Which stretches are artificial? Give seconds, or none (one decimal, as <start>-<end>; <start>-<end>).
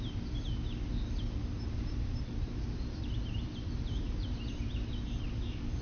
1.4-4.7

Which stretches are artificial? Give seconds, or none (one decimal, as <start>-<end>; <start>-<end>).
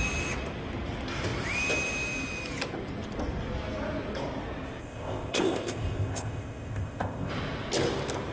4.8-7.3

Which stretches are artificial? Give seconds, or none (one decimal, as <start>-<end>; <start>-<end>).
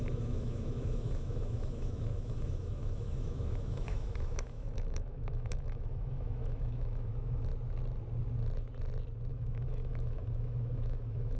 0.0-7.5; 9.3-11.4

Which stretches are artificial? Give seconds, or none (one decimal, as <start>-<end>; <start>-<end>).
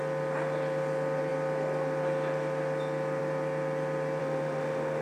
4.2-5.0